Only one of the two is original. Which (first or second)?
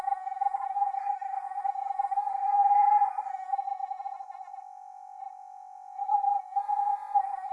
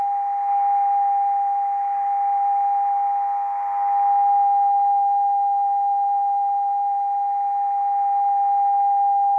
second